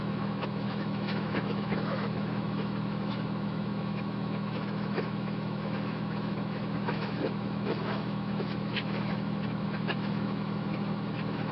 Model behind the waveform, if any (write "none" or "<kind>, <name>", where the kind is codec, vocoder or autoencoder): autoencoder, DAC-VAE